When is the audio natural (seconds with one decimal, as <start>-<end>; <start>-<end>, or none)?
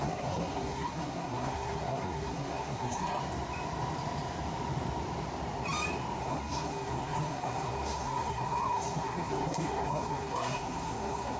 3.2-6.2